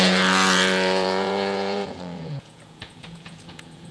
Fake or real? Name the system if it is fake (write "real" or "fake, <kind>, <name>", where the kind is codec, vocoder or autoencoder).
fake, vocoder, Vocos